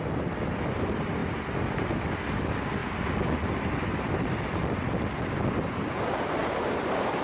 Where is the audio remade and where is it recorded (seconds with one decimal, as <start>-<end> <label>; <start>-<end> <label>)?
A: 0.0-6.4 recorded; 6.4-7.2 remade